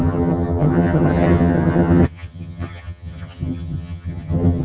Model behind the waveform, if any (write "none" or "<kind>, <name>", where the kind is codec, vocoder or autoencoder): vocoder, HiFi-GAN